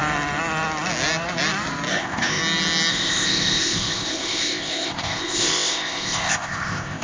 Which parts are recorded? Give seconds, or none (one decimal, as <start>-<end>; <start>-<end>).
0.0-1.9; 2.4-2.9